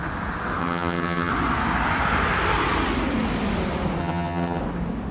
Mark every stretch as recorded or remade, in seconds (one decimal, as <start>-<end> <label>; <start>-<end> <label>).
0.0-0.6 recorded; 0.6-1.3 remade; 1.3-4.0 recorded; 4.0-4.6 remade; 4.6-5.1 recorded